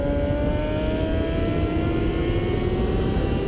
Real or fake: real